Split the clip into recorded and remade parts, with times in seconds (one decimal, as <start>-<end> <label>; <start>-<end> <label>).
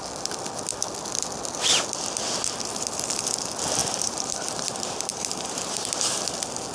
0.0-3.8 recorded; 3.8-5.7 remade; 5.7-6.7 recorded